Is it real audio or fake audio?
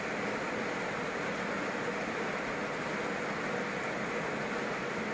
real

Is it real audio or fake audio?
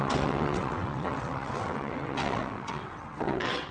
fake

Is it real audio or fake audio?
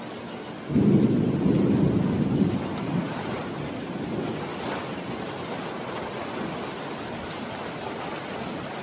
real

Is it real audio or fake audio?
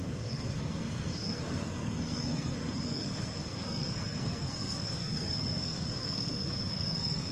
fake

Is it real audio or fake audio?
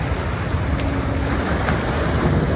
real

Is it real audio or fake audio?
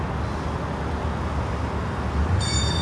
real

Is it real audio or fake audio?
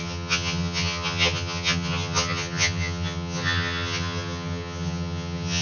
fake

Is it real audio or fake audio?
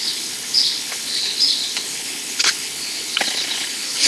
fake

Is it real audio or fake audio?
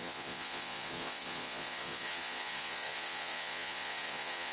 fake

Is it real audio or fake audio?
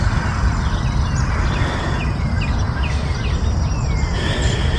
real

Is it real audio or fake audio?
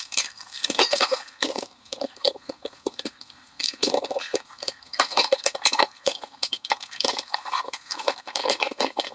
fake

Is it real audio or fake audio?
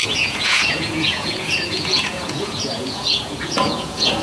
fake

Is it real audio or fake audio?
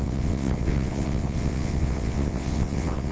fake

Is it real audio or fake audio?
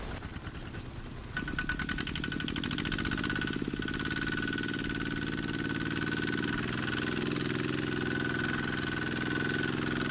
real